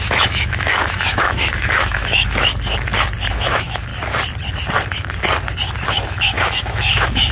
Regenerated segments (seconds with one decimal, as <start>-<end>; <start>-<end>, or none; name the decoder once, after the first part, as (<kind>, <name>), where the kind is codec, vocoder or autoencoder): 0.0-2.5 (autoencoder, DAC-VAE); 3.3-3.9; 5.9-7.3